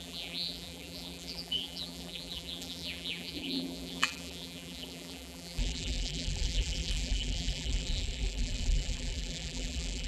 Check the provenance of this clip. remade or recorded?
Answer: remade